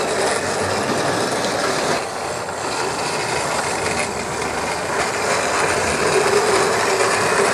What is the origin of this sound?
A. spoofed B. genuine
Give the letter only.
B